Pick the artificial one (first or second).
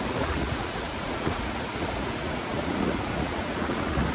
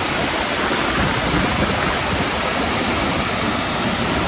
first